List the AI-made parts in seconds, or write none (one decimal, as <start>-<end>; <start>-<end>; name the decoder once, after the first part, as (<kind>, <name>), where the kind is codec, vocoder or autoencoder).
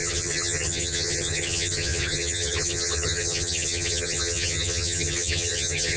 0.0-6.0 (vocoder, HiFi-GAN)